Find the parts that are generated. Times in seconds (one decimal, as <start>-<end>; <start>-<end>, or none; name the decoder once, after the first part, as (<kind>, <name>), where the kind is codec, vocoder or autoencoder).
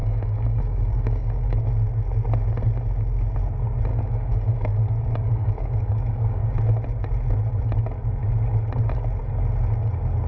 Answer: 0.0-1.7 (codec, DAC); 3.9-6.4